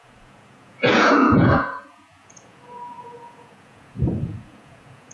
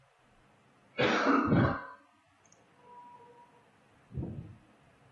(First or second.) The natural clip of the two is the second